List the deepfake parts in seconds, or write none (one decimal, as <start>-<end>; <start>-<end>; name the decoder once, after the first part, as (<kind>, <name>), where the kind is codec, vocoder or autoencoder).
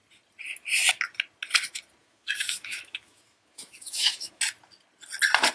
2.0-4.4 (autoencoder, DAC-VAE)